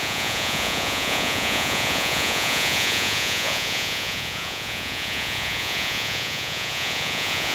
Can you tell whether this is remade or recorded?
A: remade